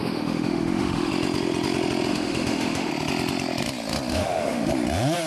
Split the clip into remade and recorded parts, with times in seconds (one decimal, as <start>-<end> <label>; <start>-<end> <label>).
0.0-1.1 remade; 1.1-2.1 recorded; 2.1-2.9 remade; 2.9-4.1 recorded; 4.1-4.7 remade; 4.7-5.3 recorded